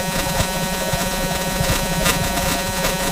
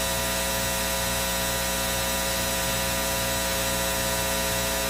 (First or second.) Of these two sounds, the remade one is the first